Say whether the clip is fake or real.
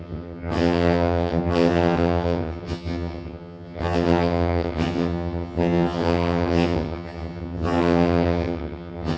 fake